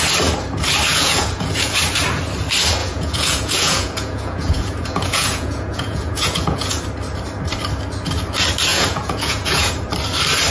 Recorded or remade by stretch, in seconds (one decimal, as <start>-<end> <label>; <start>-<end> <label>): 0.0-0.9 recorded; 0.9-1.8 remade; 1.8-2.8 recorded; 2.8-6.8 remade; 6.8-8.7 recorded; 8.7-9.7 remade; 9.7-10.5 recorded